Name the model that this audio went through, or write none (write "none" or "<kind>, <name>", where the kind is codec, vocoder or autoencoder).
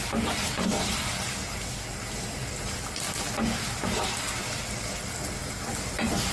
none